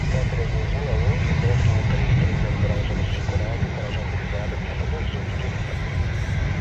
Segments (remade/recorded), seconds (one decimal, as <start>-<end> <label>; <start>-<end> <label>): 0.0-6.6 recorded